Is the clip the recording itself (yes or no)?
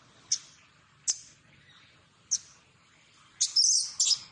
yes